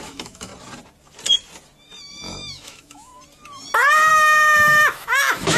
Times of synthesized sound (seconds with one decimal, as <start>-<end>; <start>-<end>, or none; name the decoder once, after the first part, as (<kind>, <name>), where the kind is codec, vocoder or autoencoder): 0.0-0.5 (autoencoder, DAC-VAE); 2.1-3.1; 4.1-5.6